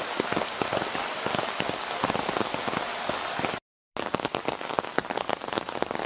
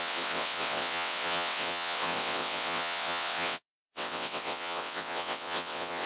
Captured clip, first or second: first